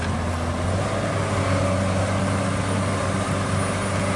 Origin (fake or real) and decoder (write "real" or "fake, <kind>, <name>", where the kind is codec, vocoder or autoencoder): real